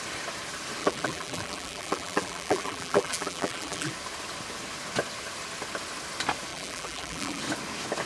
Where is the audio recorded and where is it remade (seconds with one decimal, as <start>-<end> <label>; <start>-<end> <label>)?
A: 0.0-0.8 recorded; 0.8-3.9 remade; 3.9-6.5 recorded; 6.5-7.4 remade; 7.4-8.1 recorded